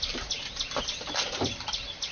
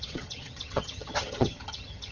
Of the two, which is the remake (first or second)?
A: second